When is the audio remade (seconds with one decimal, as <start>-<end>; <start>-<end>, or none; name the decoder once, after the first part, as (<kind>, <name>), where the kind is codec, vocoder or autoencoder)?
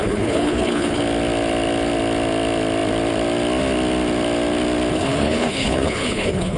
0.0-1.0 (codec, HILCodec); 4.9-6.6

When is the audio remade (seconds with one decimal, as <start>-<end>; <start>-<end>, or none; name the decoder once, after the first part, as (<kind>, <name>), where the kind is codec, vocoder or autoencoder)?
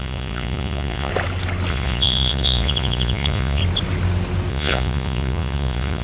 0.0-1.1 (vocoder, Vocos); 1.7-3.6; 4.5-6.0